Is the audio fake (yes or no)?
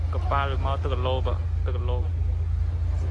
no